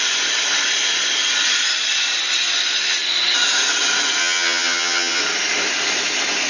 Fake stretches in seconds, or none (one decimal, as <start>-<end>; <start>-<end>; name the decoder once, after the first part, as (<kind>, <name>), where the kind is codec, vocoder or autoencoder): 4.2-5.2 (vocoder, HiFi-GAN)